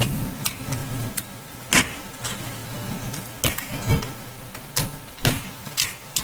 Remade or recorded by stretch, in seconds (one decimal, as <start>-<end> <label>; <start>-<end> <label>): 0.0-6.2 recorded